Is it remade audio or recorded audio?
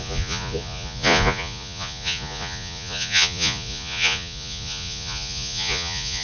remade